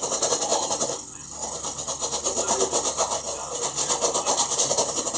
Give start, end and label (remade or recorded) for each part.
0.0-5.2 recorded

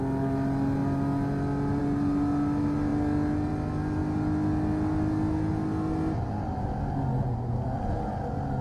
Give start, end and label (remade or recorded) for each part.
0.0-8.6 recorded

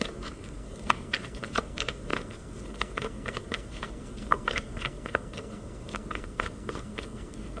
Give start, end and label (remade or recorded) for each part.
0.0-7.6 remade